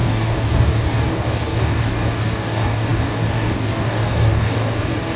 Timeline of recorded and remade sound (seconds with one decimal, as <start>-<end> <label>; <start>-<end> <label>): 0.0-5.2 remade